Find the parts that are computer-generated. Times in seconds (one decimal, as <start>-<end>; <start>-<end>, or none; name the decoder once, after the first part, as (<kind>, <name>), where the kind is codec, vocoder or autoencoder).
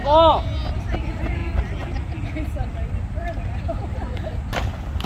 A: 0.7-1.4 (vocoder, BigVGAN v2); 2.2-5.1